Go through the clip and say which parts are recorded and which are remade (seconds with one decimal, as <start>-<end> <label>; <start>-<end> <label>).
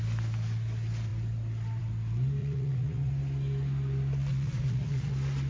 0.0-2.4 recorded; 2.4-3.1 remade; 3.1-4.3 recorded; 4.3-5.1 remade; 5.1-5.5 recorded